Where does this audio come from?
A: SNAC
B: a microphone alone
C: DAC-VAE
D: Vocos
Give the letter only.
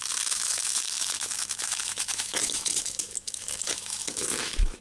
C